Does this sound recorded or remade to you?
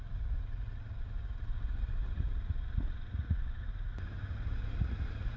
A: remade